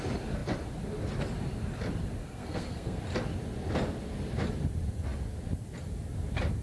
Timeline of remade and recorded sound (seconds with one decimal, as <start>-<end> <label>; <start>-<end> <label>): 0.0-2.2 recorded; 2.2-3.0 remade; 3.0-6.6 recorded